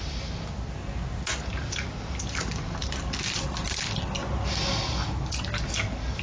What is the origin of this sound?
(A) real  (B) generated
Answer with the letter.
A